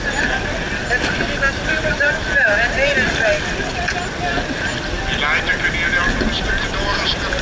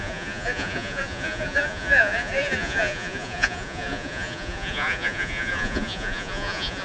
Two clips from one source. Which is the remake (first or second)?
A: second